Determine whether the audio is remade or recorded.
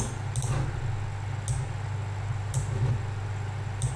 recorded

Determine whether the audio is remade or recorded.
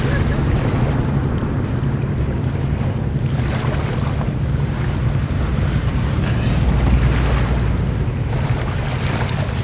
recorded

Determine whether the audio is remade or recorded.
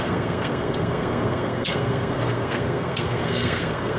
remade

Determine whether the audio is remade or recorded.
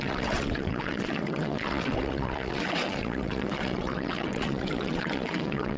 remade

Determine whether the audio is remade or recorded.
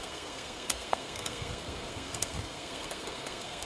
remade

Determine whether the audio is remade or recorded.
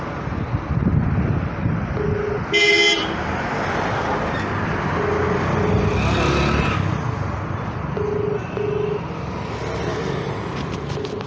recorded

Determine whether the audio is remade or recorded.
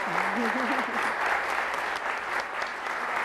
recorded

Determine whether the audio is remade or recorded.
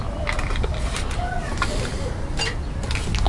recorded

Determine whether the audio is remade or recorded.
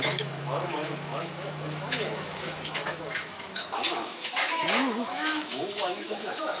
remade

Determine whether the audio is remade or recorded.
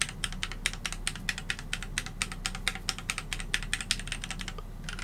recorded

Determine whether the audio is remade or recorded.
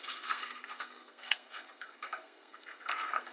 remade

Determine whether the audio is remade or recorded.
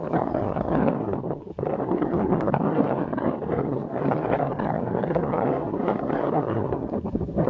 remade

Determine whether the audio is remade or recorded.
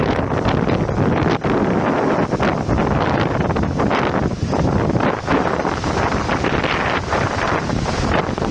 recorded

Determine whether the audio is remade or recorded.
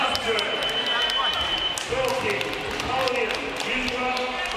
recorded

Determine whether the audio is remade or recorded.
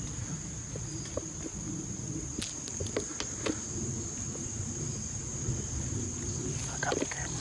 recorded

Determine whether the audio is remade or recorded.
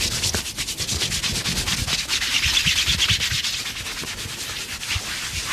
recorded